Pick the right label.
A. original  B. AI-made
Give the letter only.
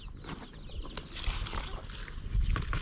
A